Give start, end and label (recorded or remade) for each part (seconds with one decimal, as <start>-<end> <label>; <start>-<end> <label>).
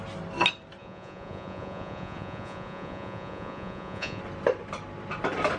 0.0-0.8 recorded; 0.8-4.2 remade; 4.2-5.6 recorded